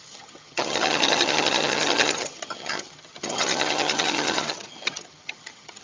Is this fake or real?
fake